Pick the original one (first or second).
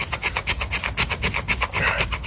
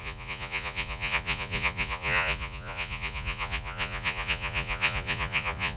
first